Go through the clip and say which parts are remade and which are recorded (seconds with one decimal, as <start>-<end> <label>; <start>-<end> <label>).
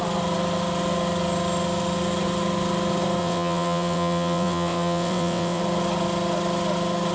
0.0-3.2 recorded; 3.2-5.6 remade; 5.6-7.1 recorded